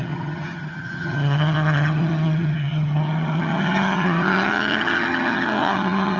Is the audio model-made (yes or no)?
yes